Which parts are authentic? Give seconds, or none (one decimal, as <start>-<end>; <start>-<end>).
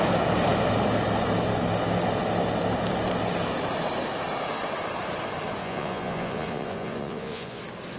0.0-5.6; 7.6-8.0